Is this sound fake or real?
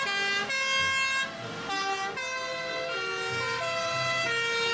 real